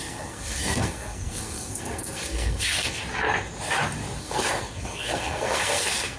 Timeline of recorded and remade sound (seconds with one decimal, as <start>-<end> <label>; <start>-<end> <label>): 0.0-3.0 remade; 3.0-4.2 recorded; 4.2-6.2 remade